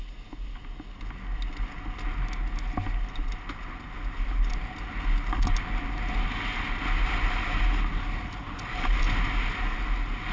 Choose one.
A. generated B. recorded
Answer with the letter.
B